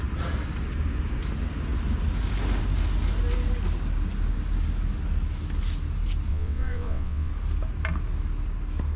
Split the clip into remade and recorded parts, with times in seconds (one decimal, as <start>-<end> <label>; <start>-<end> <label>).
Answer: 0.0-6.3 recorded; 6.3-7.3 remade; 7.3-9.0 recorded